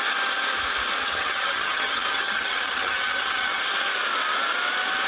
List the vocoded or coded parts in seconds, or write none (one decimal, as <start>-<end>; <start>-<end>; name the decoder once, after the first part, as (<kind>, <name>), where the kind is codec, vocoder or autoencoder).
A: 1.0-3.6 (vocoder, HiFi-GAN)